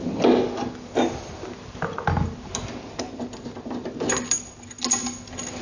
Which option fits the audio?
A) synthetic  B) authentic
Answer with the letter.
B